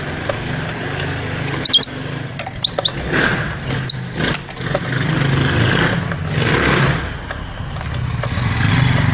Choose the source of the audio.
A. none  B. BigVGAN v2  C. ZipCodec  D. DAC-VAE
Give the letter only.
A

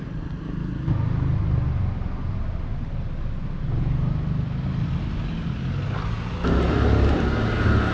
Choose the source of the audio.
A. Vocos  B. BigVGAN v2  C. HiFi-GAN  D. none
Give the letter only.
D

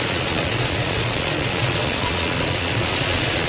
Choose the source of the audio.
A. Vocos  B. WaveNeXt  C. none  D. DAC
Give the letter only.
A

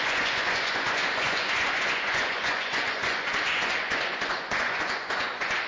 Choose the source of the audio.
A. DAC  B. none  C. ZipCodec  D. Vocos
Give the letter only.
D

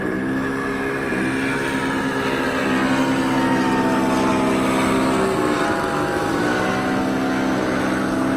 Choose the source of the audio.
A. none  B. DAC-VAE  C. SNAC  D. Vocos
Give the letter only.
A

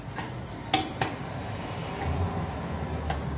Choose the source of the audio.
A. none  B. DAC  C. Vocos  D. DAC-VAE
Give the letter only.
A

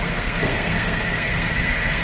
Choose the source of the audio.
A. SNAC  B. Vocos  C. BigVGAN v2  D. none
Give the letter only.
A